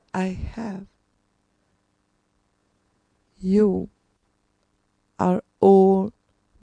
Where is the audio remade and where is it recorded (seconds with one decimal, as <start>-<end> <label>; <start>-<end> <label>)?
0.0-0.7 remade; 0.7-2.6 recorded; 2.6-4.3 remade; 4.3-6.6 recorded